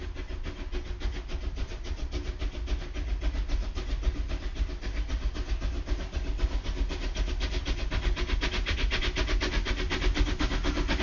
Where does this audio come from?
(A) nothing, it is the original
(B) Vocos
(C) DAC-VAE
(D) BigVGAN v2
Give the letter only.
A